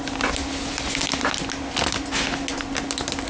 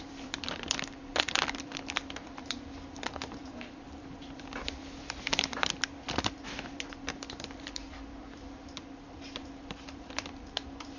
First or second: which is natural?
first